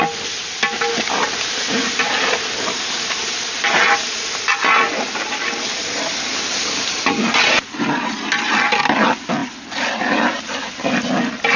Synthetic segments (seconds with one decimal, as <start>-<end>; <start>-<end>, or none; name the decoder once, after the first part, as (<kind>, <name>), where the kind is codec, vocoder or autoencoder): none